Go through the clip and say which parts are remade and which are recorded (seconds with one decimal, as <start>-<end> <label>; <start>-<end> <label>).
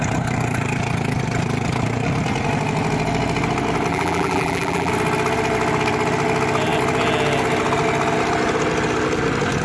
0.0-3.9 recorded; 3.9-4.9 remade; 4.9-9.6 recorded